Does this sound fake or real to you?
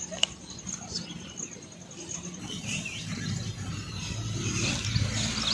real